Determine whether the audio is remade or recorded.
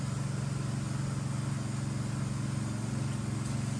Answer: recorded